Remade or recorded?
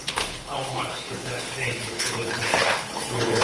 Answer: remade